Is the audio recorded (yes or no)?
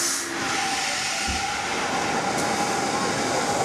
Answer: yes